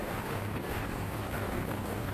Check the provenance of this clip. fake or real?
fake